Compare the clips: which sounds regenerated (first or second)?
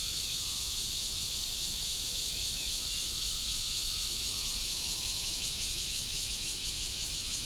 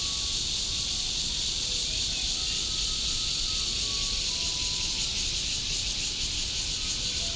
first